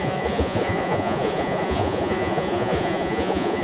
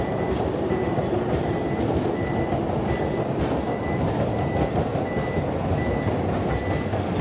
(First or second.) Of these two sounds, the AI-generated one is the first